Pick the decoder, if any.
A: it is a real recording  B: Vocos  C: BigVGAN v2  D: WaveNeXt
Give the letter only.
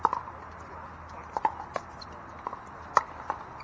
A